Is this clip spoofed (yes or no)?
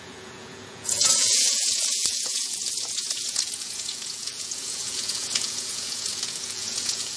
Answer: yes